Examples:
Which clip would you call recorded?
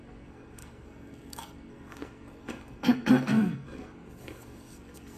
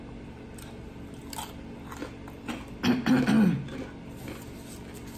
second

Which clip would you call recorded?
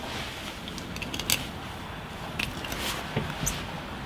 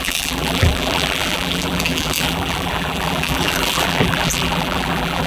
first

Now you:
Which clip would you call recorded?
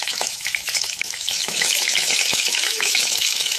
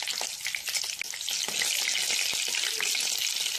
second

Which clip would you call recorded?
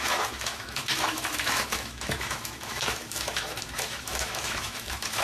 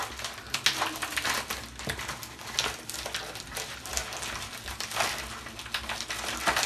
second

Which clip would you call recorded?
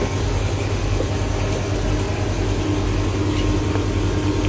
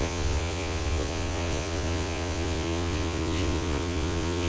first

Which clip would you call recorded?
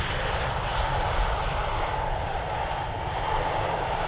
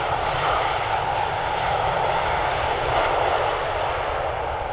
first